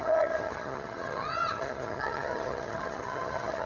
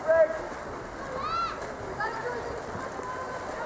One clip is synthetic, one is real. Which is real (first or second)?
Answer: second